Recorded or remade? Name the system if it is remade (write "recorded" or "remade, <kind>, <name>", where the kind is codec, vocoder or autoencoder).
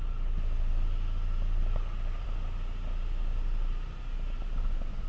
recorded